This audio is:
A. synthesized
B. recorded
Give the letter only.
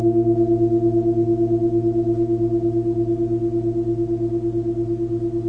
B